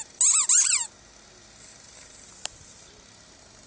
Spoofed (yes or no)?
no